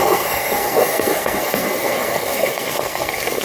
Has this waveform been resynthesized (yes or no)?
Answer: yes